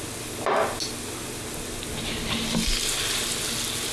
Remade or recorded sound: recorded